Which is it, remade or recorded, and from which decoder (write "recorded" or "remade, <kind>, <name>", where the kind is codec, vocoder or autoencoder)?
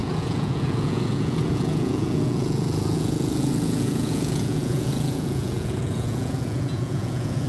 remade, vocoder, Vocos